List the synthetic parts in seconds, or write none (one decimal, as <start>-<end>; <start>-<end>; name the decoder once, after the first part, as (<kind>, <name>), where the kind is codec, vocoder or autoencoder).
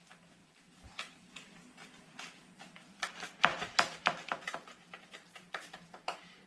3.5-6.5 (vocoder, BigVGAN v2)